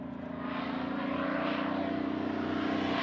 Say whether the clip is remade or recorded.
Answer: recorded